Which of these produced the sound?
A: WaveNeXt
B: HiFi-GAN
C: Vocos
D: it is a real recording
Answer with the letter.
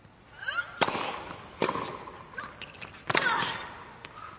D